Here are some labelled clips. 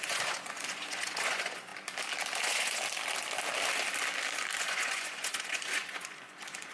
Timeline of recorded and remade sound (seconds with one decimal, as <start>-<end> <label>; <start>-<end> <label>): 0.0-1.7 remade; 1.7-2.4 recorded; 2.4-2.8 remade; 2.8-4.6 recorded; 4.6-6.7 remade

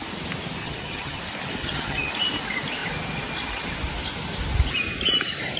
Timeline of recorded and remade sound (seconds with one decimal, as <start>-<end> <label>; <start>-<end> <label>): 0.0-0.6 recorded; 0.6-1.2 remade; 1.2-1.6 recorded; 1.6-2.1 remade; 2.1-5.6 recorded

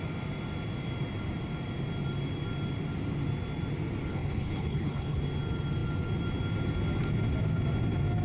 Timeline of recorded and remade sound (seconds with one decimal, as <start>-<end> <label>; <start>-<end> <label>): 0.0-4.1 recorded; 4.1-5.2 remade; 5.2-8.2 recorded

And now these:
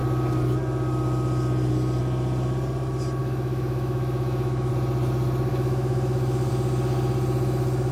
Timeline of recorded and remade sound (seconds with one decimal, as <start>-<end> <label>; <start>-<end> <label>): 0.0-3.2 recorded; 3.2-4.7 remade; 4.7-5.5 recorded; 5.5-6.5 remade; 6.5-7.9 recorded

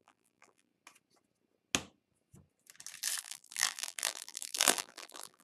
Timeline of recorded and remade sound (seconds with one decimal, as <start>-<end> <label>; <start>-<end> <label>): 0.0-0.7 remade; 0.7-3.2 recorded; 3.2-5.4 remade

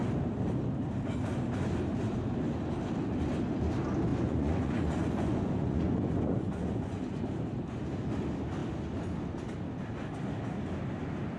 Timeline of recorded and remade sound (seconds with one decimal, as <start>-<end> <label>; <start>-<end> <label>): 0.0-4.1 recorded; 4.1-7.2 remade; 7.2-11.4 recorded

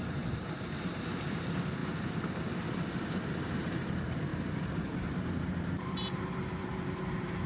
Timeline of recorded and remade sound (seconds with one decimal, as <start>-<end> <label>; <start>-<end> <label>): 0.0-7.5 remade

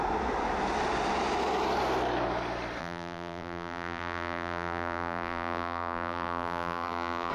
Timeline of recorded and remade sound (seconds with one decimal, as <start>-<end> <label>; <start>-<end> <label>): 0.0-2.8 recorded; 2.8-7.3 remade